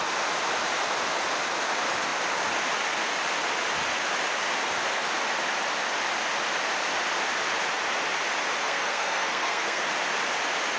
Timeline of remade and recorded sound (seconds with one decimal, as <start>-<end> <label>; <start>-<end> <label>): 0.0-8.6 recorded; 8.6-9.8 remade; 9.8-10.8 recorded